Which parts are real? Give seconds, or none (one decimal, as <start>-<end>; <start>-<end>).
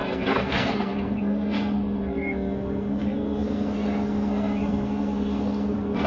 none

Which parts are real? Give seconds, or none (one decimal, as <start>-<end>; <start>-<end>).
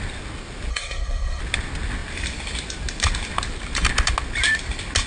0.0-0.7; 1.4-5.1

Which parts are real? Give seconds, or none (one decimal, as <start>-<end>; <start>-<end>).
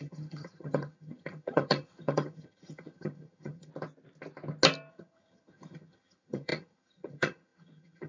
3.7-4.9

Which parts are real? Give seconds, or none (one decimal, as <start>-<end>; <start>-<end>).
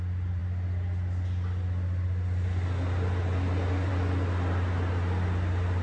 0.0-5.8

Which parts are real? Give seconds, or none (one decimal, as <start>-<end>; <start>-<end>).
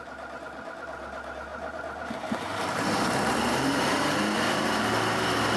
0.0-1.5; 4.9-5.6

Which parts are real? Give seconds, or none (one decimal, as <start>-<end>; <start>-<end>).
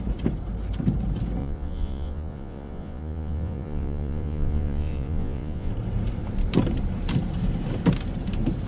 0.0-1.4; 5.7-8.7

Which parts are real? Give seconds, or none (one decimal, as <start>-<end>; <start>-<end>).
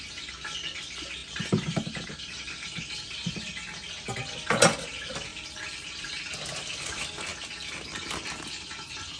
0.0-5.3; 5.9-9.2